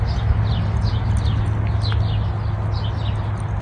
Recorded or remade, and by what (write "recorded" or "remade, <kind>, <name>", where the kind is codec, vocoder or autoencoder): recorded